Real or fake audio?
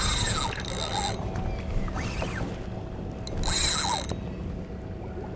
real